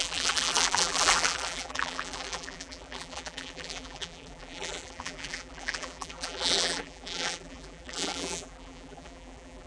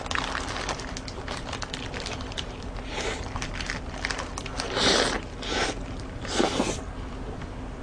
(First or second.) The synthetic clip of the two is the first